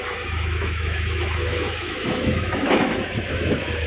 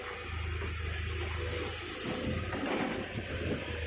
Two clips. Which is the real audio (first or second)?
second